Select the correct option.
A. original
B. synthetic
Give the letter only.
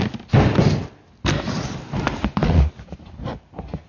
A